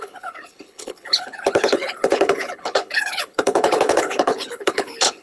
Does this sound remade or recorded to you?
remade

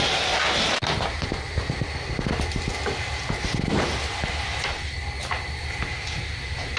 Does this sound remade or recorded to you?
recorded